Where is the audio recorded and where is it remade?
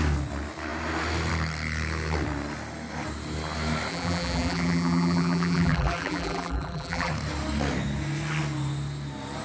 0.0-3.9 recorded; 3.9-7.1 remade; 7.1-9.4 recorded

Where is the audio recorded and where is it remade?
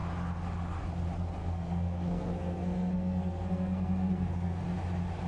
0.0-1.4 recorded; 1.4-4.6 remade; 4.6-5.3 recorded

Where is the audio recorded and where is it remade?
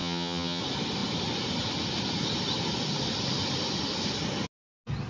0.0-0.6 remade; 0.6-5.1 recorded